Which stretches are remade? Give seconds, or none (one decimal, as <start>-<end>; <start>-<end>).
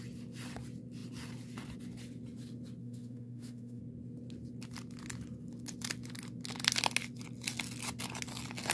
2.8-3.8